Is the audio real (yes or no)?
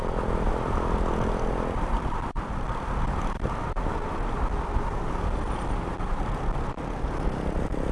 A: yes